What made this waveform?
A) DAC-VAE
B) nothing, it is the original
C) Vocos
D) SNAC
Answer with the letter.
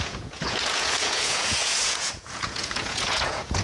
C